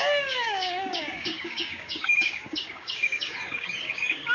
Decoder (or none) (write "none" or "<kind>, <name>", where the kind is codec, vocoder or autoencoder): codec, DAC